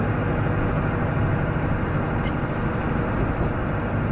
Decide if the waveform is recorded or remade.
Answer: recorded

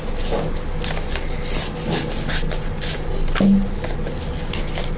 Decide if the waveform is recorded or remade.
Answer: recorded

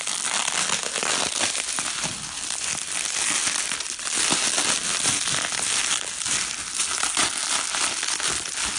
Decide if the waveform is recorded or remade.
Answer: recorded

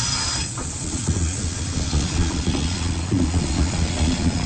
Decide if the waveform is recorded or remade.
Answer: remade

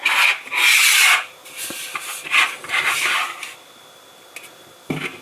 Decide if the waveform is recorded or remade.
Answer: recorded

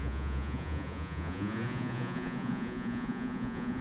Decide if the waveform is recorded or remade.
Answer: remade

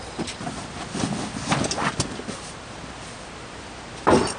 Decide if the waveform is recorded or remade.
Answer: recorded